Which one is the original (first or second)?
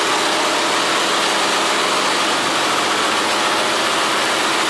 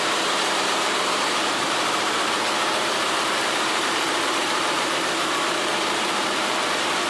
first